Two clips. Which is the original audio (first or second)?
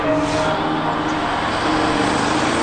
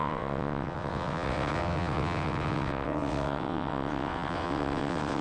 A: first